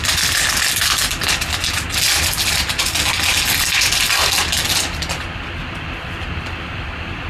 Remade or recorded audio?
recorded